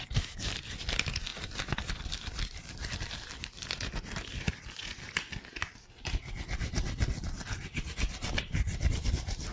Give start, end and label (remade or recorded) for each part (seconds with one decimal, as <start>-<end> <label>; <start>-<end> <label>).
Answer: 0.0-9.5 recorded